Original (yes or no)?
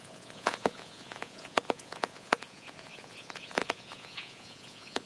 no